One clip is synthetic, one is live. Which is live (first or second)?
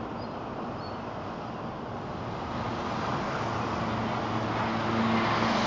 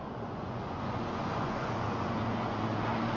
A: first